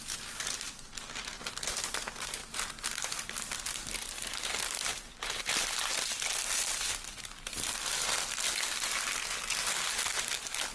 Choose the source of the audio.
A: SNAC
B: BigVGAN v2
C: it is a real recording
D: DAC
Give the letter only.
C